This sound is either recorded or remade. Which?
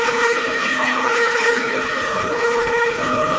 remade